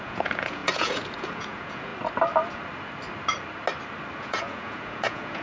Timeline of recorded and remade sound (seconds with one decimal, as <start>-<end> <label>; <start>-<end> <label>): 0.0-1.9 remade; 1.9-4.2 recorded; 4.2-5.4 remade